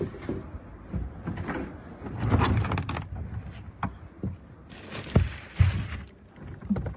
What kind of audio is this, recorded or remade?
recorded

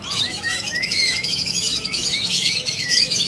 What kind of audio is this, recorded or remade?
remade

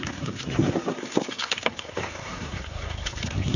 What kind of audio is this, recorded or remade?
remade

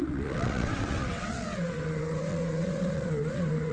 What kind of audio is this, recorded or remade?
remade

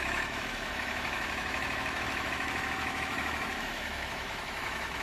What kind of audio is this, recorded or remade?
remade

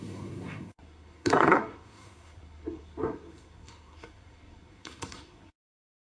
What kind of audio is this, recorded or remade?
remade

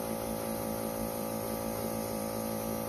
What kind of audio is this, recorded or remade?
remade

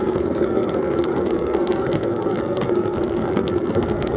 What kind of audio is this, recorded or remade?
remade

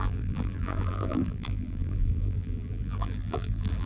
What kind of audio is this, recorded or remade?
remade